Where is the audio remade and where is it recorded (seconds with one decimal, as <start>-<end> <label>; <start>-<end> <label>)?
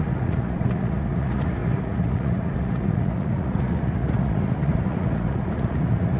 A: 0.0-6.2 remade